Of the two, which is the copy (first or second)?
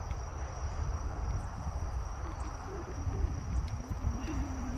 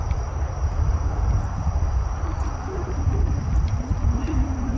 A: second